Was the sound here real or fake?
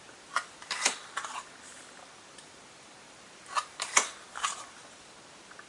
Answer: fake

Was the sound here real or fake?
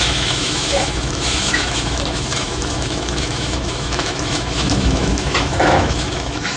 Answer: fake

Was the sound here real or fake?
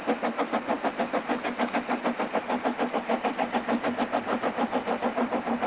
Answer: real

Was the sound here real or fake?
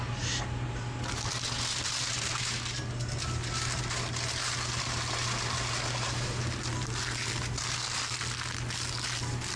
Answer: real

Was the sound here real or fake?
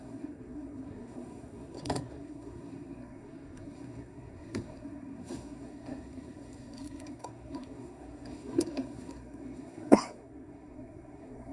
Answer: fake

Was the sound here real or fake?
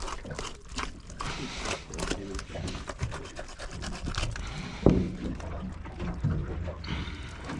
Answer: real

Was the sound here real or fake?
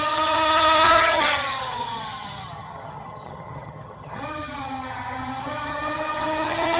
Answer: fake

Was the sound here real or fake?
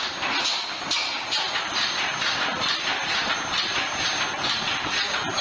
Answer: real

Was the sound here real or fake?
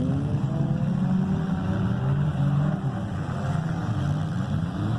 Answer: real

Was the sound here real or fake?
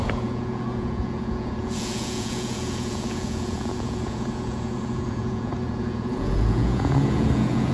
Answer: fake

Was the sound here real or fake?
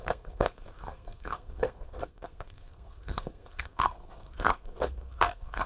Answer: fake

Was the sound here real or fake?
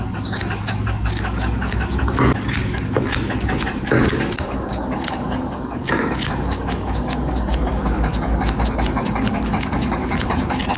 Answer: fake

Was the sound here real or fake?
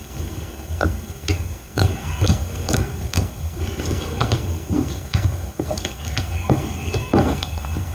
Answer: fake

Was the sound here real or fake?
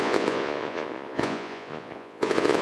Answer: fake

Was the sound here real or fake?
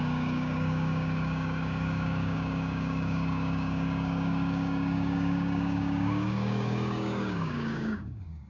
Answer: fake